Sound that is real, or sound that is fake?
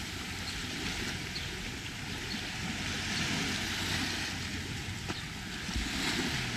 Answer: real